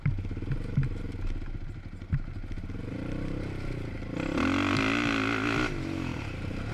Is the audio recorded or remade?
recorded